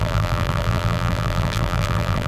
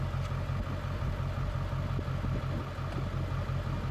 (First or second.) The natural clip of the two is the second